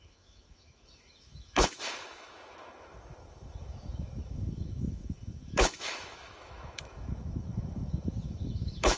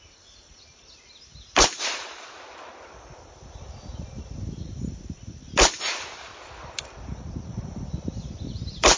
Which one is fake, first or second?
first